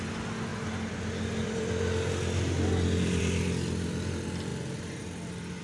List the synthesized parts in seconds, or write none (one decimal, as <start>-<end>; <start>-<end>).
none